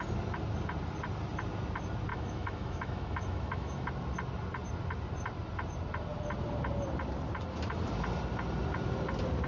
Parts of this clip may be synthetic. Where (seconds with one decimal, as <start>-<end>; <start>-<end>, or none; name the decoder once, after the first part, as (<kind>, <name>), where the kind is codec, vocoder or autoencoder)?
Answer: 2.1-3.9 (autoencoder, DAC-VAE)